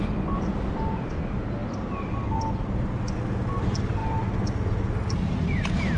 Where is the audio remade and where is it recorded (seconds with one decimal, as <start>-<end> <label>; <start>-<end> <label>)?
0.0-1.6 recorded; 1.6-2.5 remade; 2.5-4.0 recorded; 4.0-4.8 remade; 4.8-6.0 recorded